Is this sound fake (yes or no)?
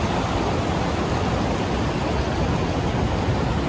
no